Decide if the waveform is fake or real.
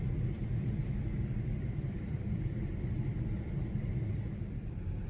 fake